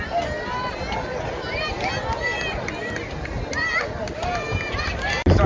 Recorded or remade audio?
recorded